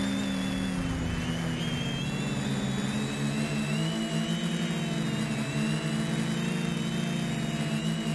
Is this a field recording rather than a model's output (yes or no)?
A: yes